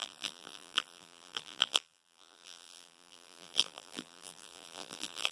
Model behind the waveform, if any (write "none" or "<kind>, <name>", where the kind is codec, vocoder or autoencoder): vocoder, BigVGAN v2